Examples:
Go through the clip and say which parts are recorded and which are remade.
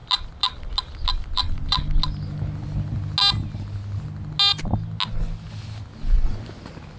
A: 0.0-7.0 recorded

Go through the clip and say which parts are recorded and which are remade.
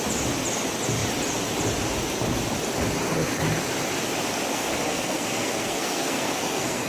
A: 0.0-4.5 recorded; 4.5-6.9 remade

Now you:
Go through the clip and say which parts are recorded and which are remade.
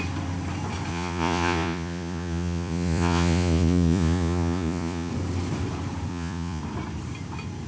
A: 0.0-0.9 recorded; 0.9-5.1 remade; 5.1-6.1 recorded; 6.1-6.6 remade; 6.6-7.7 recorded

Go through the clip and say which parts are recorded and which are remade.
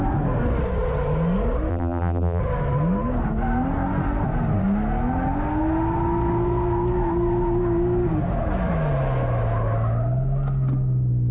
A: 0.0-1.7 recorded; 1.7-2.4 remade; 2.4-11.3 recorded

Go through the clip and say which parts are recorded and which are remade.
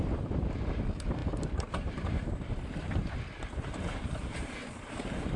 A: 0.0-5.4 remade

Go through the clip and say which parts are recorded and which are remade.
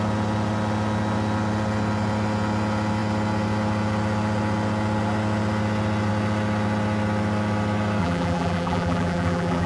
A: 0.0-8.0 recorded; 8.0-9.7 remade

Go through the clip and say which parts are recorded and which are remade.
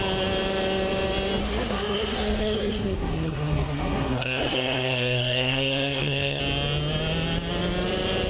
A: 0.0-1.4 recorded; 1.4-6.4 remade; 6.4-8.3 recorded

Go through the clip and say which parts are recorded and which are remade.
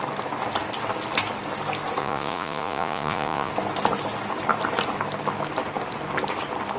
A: 0.0-2.0 recorded; 2.0-3.5 remade; 3.5-6.8 recorded